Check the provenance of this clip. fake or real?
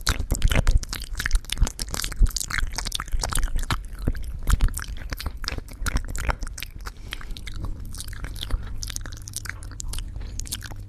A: fake